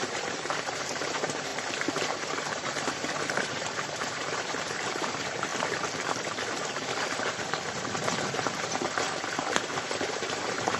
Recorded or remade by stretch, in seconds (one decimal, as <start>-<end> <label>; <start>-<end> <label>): 0.0-5.5 remade; 5.5-7.1 recorded; 7.1-10.8 remade